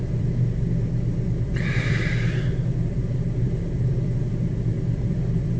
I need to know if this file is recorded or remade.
remade